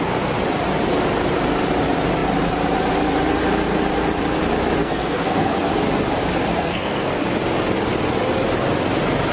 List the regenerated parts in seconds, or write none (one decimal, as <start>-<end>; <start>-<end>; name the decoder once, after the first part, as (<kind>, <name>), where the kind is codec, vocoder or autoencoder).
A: 4.8-5.7 (codec, SNAC); 6.5-7.1